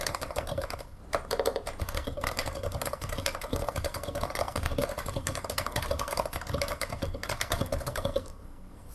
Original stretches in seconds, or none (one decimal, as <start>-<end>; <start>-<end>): 1.0-1.8